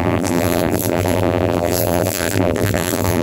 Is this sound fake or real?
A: fake